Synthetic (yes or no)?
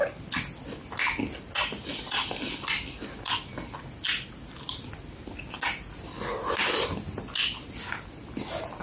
no